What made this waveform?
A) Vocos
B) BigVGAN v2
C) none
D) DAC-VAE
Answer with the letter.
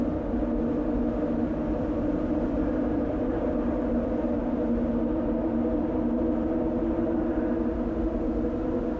C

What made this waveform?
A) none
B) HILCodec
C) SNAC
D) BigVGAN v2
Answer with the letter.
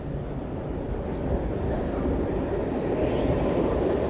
A